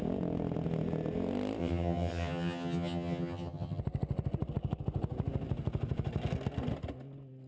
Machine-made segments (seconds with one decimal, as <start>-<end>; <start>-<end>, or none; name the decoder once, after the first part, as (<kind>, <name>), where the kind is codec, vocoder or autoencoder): 1.6-3.8 (vocoder, HiFi-GAN)